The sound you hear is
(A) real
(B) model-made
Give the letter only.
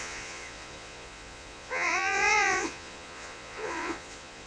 B